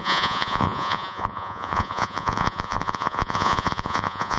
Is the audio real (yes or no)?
no